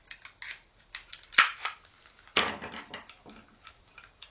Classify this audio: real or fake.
real